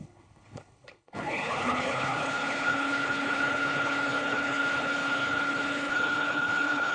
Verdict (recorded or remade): remade